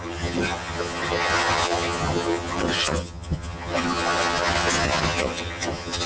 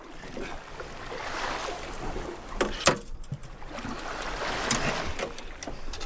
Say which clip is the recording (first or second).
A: second